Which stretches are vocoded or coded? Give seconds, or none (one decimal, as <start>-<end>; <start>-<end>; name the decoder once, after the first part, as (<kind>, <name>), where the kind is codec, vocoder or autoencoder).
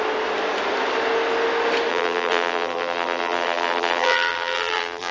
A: 1.9-5.1 (vocoder, BigVGAN v2)